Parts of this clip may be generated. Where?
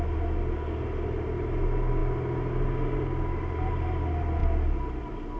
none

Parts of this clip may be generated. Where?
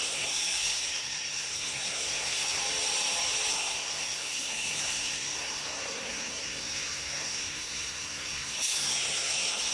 0.0-2.6 (codec, SNAC); 3.5-9.7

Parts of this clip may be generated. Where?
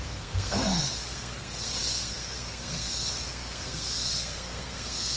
0.0-5.2 (codec, SNAC)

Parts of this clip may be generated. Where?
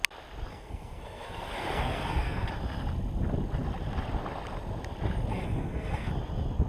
0.5-2.5 (codec, SNAC); 5.3-6.1